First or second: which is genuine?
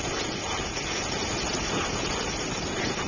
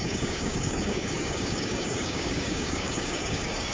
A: first